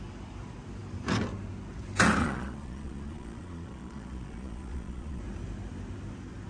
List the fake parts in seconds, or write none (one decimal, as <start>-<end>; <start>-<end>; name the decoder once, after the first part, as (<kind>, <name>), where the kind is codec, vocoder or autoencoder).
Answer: 2.2-5.2 (vocoder, Vocos)